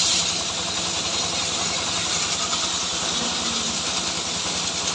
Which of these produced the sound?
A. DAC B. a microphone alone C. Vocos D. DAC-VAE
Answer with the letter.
B